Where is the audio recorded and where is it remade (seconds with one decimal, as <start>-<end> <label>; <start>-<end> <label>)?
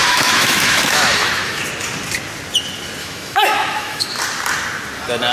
0.0-1.6 remade; 1.6-3.0 recorded; 3.0-4.2 remade; 4.2-5.3 recorded